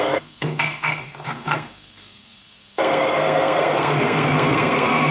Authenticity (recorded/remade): remade